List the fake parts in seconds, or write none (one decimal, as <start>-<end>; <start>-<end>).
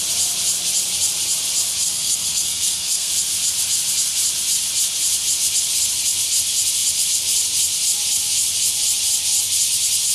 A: 1.8-3.1